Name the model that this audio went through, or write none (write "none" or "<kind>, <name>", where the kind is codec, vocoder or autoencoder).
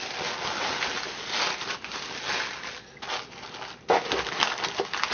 none